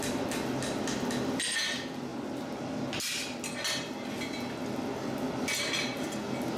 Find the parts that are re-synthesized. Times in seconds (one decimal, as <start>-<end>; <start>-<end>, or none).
none